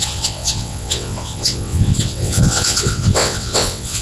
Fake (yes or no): yes